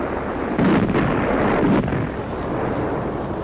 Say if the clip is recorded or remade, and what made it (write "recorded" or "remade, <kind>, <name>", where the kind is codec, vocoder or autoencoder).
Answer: recorded